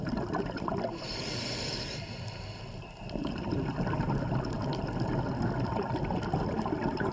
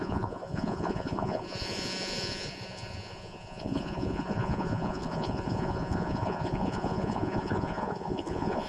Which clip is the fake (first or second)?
second